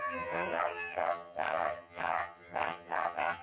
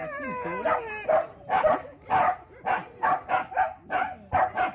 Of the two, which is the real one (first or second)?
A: second